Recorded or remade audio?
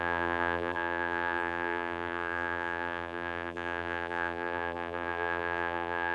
remade